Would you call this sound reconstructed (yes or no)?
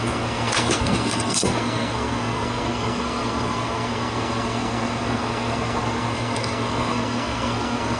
yes